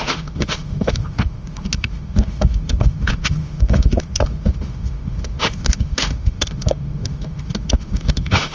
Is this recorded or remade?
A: remade